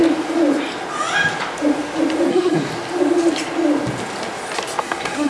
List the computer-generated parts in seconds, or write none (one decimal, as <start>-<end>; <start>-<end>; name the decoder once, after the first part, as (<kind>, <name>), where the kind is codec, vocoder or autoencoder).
2.3-2.7 (codec, SNAC); 4.8-5.3